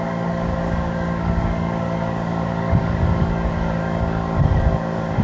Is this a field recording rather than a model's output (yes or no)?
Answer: no